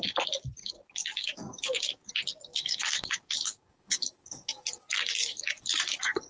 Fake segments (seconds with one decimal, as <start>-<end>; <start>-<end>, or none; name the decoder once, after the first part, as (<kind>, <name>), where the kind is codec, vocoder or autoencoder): 0.6-2.1 (codec, DAC); 2.5-6.3